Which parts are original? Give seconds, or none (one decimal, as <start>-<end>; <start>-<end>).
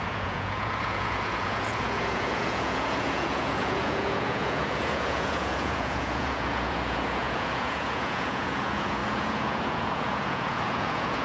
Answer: none